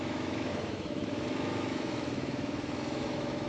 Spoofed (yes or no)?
yes